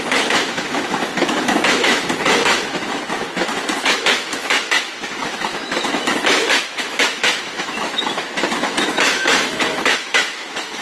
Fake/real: fake